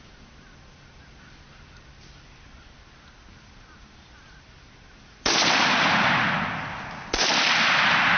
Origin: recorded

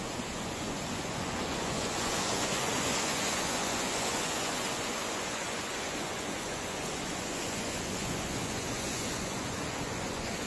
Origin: remade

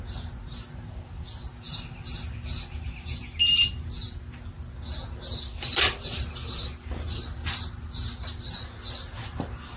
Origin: recorded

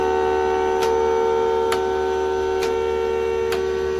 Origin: recorded